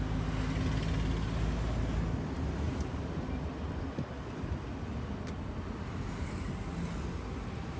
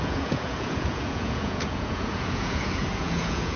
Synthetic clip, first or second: second